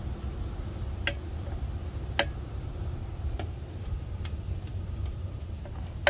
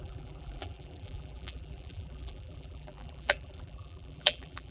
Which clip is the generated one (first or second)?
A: second